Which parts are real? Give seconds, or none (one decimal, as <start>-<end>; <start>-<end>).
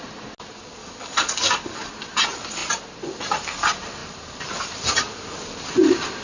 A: 0.0-0.8; 1.9-6.2